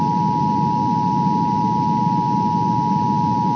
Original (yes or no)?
yes